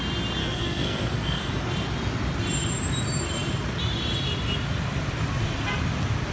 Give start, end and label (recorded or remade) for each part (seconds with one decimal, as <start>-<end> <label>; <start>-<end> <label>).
0.0-0.4 recorded; 0.4-1.6 remade; 1.6-6.3 recorded